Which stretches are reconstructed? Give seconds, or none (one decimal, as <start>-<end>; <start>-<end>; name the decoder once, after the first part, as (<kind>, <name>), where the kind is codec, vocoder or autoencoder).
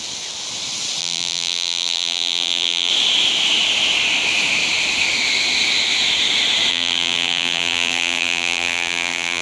1.0-2.9 (vocoder, BigVGAN v2); 6.7-9.4